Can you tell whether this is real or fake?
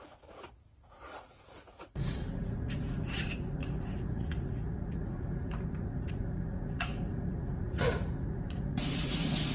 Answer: fake